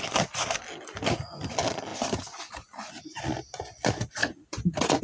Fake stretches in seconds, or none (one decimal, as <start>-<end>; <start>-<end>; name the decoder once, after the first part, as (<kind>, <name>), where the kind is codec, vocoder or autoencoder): 4.2-5.0 (vocoder, Vocos)